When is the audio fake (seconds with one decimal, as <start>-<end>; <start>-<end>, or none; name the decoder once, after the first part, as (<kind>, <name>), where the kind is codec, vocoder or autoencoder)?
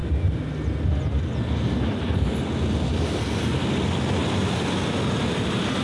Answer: 4.2-5.8 (vocoder, BigVGAN v2)